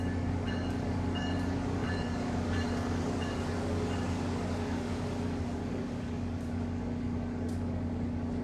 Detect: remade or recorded remade